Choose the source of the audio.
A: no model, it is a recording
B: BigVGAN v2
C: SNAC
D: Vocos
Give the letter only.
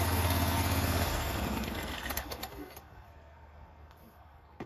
C